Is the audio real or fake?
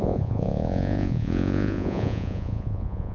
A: fake